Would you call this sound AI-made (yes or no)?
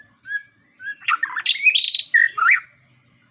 no